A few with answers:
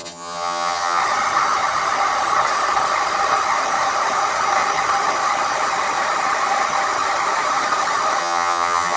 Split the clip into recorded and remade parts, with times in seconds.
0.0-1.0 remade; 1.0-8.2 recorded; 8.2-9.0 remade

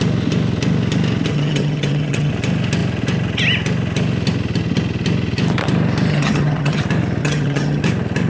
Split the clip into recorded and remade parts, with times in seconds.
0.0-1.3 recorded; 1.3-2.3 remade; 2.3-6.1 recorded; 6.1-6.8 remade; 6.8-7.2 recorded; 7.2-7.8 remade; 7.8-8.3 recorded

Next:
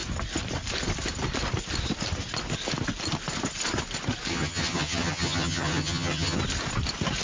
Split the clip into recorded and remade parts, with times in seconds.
0.0-4.3 recorded; 4.3-6.4 remade; 6.4-7.2 recorded

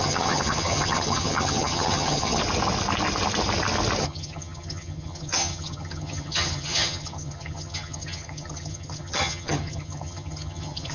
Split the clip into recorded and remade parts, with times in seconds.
0.0-2.4 remade; 2.4-4.0 recorded; 4.0-10.9 remade

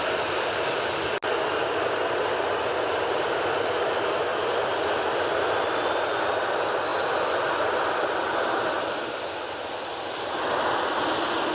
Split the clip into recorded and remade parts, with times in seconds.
0.0-11.5 recorded

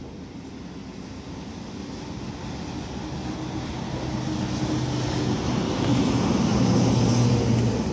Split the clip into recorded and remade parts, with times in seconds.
0.0-7.9 recorded